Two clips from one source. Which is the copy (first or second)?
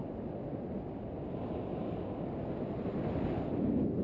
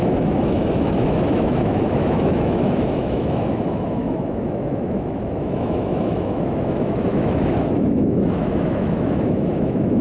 second